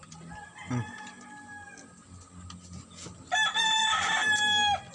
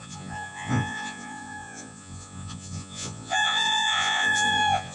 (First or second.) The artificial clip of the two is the second